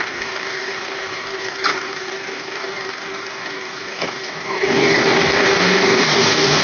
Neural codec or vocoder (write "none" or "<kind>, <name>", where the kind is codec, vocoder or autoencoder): codec, DAC